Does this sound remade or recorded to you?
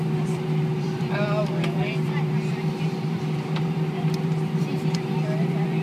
remade